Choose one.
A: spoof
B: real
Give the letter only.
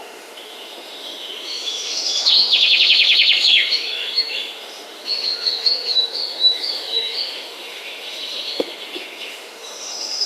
A